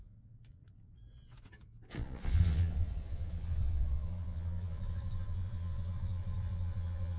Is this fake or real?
fake